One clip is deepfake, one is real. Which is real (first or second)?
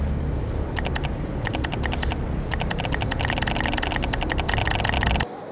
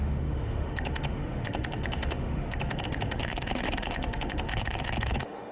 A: first